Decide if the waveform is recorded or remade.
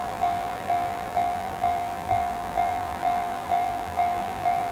remade